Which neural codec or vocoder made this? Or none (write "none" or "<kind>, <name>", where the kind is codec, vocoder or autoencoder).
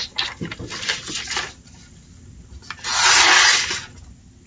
none